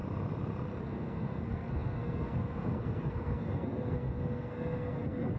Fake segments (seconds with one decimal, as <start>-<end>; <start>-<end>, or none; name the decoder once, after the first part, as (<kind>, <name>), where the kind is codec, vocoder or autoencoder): 0.8-5.4 (codec, SNAC)